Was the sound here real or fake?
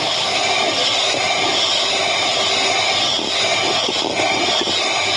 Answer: real